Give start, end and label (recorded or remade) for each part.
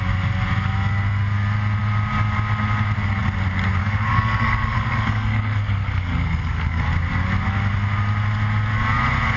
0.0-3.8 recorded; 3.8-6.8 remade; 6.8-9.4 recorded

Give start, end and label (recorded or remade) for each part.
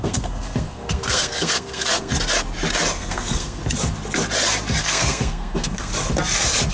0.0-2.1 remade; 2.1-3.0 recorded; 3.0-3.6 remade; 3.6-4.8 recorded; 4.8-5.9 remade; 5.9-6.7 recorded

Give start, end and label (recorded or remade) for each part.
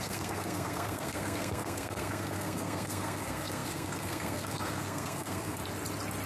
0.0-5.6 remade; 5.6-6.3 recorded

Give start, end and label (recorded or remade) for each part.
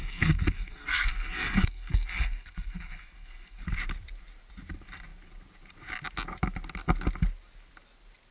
0.0-3.6 remade; 3.6-8.3 recorded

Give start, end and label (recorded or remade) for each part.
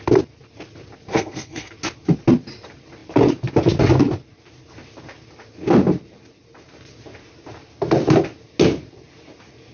0.0-1.1 recorded; 1.1-1.7 remade; 1.7-9.7 recorded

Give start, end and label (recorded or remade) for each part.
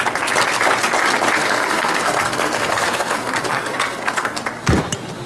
0.0-1.4 recorded; 1.4-4.4 remade; 4.4-5.3 recorded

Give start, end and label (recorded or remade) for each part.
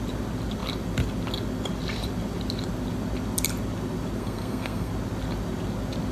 0.0-4.2 recorded; 4.2-4.9 remade; 4.9-6.1 recorded